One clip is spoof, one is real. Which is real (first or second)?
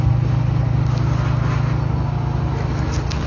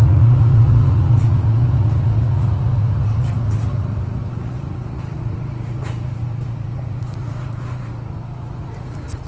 first